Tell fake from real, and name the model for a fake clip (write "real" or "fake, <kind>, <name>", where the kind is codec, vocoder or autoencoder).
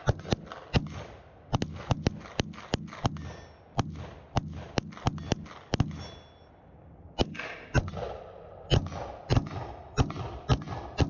real